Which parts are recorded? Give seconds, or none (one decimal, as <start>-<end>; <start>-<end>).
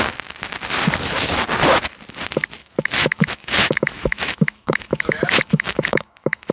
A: 0.0-2.6